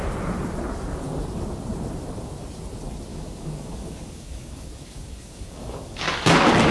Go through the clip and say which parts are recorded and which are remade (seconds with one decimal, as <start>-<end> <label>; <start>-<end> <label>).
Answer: 0.0-3.1 recorded; 3.1-6.7 remade